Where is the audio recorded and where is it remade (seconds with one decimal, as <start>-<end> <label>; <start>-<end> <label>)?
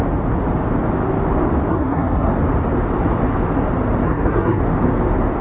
0.0-1.7 recorded; 1.7-2.3 remade; 2.3-4.0 recorded; 4.0-4.6 remade; 4.6-5.4 recorded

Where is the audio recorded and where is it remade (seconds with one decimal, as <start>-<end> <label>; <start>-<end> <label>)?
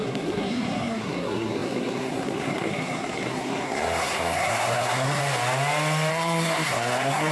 0.0-5.2 remade; 5.2-6.1 recorded; 6.1-7.3 remade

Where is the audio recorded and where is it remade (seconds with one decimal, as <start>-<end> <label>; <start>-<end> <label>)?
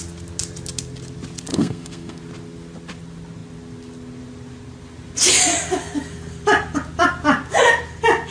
0.0-1.5 recorded; 1.5-2.2 remade; 2.2-8.3 recorded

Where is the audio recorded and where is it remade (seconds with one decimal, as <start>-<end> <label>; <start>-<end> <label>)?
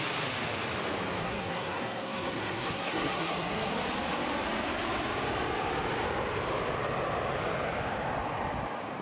0.0-1.2 recorded; 1.2-3.7 remade; 3.7-9.0 recorded